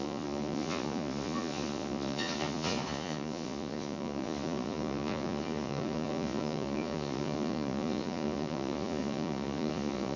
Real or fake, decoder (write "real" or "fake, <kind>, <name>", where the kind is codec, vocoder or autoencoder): fake, vocoder, Vocos